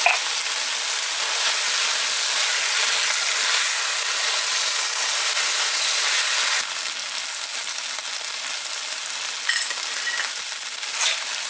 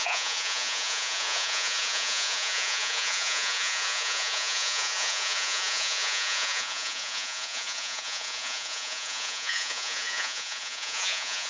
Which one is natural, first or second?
first